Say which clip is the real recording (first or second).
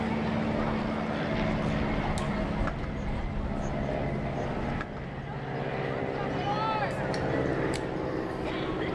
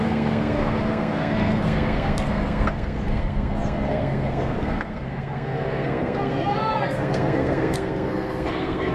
first